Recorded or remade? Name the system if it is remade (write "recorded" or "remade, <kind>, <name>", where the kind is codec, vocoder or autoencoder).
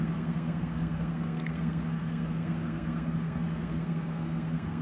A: remade, codec, SNAC